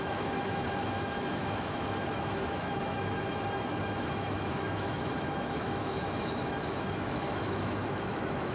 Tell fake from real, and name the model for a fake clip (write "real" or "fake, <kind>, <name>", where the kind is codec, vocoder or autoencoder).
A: fake, autoencoder, DAC-VAE